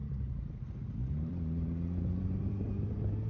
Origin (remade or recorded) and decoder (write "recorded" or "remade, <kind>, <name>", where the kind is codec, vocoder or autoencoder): remade, vocoder, BigVGAN v2